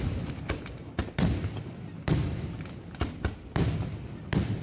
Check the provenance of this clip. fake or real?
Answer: real